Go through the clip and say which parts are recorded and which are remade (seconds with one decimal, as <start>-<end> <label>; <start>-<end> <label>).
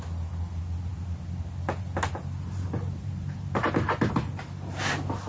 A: 0.0-5.3 recorded